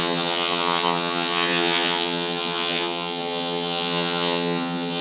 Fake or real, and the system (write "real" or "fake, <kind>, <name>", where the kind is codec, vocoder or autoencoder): fake, vocoder, HiFi-GAN